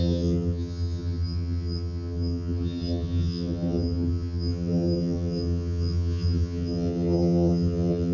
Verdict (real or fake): fake